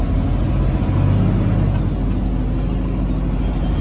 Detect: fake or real real